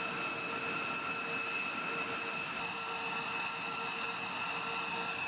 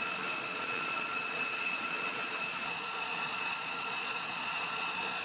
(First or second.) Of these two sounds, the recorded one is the first